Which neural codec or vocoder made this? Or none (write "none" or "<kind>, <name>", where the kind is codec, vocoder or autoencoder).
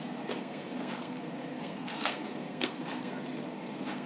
codec, SNAC